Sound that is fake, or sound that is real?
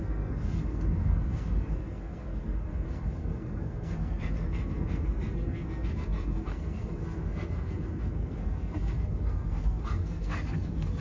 fake